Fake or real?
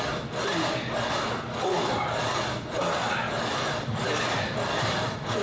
real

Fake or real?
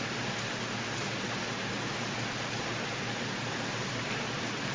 real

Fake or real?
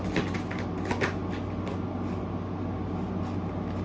real